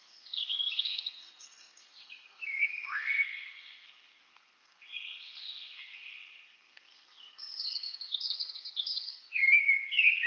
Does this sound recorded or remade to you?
remade